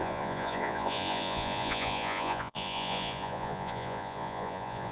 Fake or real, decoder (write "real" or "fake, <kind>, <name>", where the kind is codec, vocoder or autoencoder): fake, vocoder, Vocos